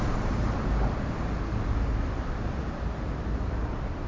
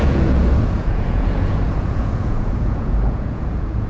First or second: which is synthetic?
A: second